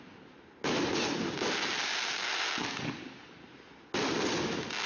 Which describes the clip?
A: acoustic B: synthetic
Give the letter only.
A